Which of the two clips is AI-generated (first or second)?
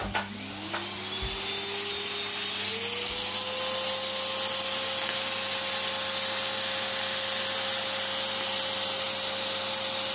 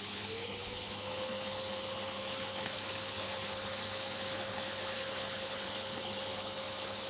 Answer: second